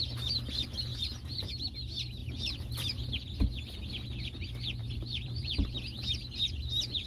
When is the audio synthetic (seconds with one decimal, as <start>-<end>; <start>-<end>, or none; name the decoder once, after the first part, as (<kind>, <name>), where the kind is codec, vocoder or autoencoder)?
0.9-1.5 (vocoder, BigVGAN v2); 2.2-3.1; 4.8-5.5